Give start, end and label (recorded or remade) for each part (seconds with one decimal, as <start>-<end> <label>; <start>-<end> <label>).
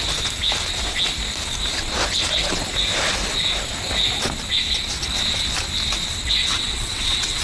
0.0-6.4 recorded; 6.4-7.4 remade